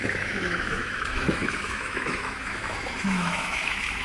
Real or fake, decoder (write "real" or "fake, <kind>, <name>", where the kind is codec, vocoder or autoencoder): fake, autoencoder, DAC-VAE